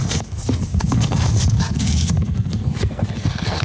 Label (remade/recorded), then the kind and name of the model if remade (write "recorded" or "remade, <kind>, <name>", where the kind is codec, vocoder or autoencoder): remade, codec, SNAC